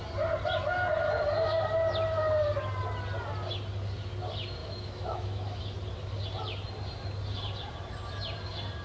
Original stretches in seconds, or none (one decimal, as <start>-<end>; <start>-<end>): 0.0-4.6; 5.6-8.8